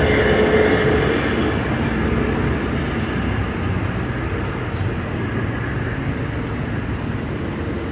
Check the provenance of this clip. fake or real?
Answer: real